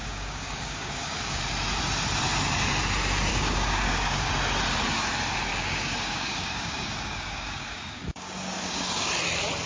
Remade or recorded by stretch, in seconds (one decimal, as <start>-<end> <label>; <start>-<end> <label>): 0.0-1.4 remade; 1.4-3.3 recorded; 3.3-4.3 remade; 4.3-5.5 recorded; 5.5-9.1 remade; 9.1-9.7 recorded